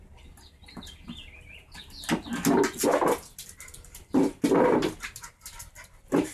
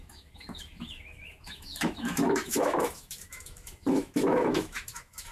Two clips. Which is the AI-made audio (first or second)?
second